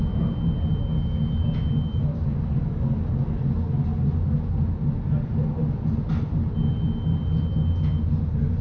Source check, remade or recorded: recorded